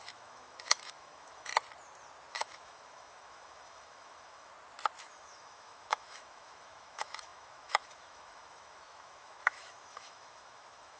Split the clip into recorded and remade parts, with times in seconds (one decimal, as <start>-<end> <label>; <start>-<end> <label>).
0.0-1.5 remade; 1.5-2.3 recorded; 2.3-4.5 remade; 4.5-5.0 recorded; 5.0-11.0 remade